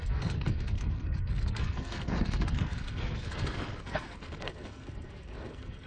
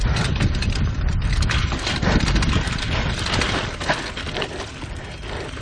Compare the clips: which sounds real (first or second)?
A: second